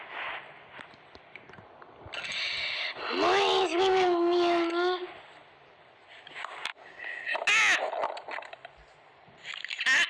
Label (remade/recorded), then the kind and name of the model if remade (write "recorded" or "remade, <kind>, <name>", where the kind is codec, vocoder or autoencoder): recorded